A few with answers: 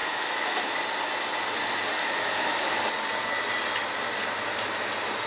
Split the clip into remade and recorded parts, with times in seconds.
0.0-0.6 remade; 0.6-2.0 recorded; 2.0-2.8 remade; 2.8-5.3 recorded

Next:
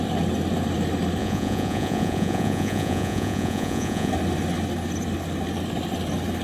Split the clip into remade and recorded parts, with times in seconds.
0.0-1.2 recorded; 1.2-4.1 remade; 4.1-6.4 recorded

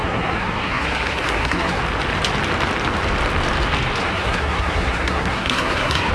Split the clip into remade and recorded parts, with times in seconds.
0.0-1.8 remade; 1.8-4.0 recorded; 4.0-6.1 remade

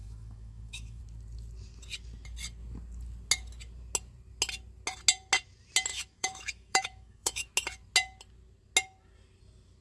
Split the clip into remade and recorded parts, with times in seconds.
0.0-1.0 remade; 1.0-5.9 recorded; 5.9-7.5 remade; 7.5-9.8 recorded